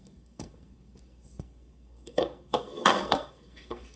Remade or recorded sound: remade